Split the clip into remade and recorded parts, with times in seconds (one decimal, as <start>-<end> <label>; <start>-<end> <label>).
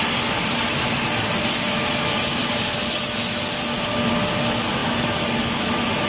0.0-6.1 recorded